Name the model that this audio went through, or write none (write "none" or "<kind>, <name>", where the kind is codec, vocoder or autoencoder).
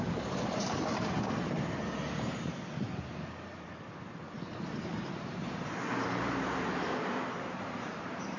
vocoder, BigVGAN v2